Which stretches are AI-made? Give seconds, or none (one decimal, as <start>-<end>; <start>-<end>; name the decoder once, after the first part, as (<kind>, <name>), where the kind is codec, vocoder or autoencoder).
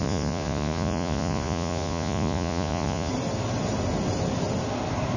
0.0-3.1 (vocoder, Vocos)